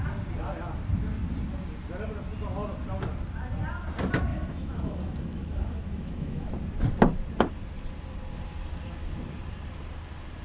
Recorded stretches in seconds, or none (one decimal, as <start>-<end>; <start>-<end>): 0.0-4.3; 6.5-10.4